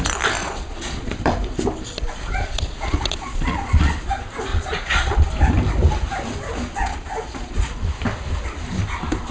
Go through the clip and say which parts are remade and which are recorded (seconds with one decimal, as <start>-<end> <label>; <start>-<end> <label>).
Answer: 0.0-0.4 recorded; 0.4-1.1 remade; 1.1-2.4 recorded; 2.4-4.0 remade; 4.0-4.5 recorded; 4.5-5.3 remade; 5.3-6.9 recorded; 6.9-7.9 remade; 7.9-9.3 recorded